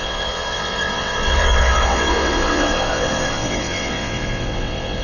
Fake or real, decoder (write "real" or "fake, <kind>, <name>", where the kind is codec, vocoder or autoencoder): fake, vocoder, WaveNeXt